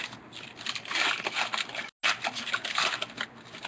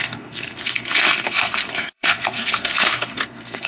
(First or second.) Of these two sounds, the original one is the first